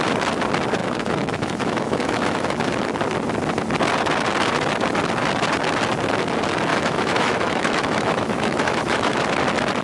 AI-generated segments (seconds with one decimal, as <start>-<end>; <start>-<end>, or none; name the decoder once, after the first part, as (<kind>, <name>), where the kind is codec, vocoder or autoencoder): 0.8-2.7 (autoencoder, DAC-VAE); 6.7-9.2